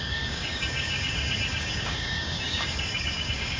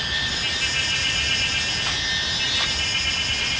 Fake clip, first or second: first